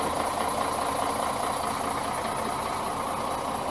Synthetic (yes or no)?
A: no